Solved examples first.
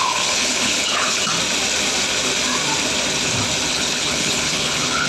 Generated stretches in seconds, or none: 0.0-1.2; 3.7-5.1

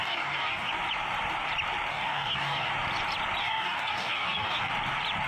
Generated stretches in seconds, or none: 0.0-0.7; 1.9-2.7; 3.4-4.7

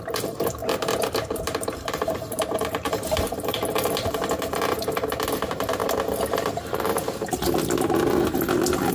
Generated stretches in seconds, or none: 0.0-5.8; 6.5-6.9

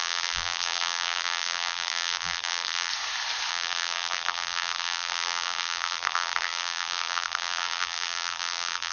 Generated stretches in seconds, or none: 0.0-2.9; 3.5-8.9